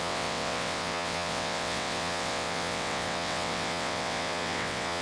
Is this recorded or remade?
remade